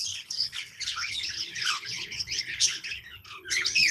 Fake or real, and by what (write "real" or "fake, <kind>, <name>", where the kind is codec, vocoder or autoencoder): fake, codec, HILCodec